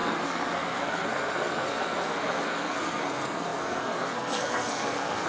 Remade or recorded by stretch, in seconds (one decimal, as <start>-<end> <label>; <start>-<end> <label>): 0.0-5.3 remade